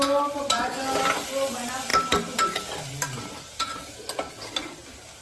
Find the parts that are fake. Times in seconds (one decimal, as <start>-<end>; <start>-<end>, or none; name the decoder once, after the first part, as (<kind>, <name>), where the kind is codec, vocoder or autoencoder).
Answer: none